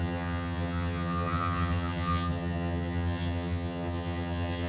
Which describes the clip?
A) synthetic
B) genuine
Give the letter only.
A